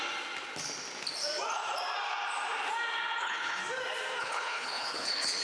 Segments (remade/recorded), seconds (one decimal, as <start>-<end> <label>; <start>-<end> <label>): 0.0-3.2 recorded; 3.2-3.6 remade; 3.6-4.2 recorded; 4.2-5.4 remade